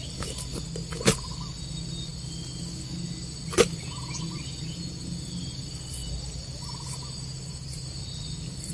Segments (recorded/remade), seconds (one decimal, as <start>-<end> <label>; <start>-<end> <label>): 0.0-8.7 recorded

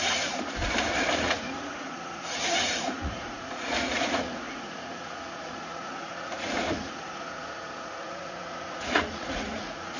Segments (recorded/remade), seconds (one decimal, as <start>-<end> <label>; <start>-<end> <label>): 0.0-0.6 remade; 0.6-1.2 recorded; 1.2-10.0 remade

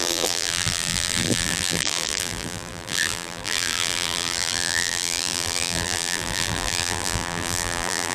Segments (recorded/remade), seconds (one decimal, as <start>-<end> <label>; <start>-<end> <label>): 0.0-8.1 remade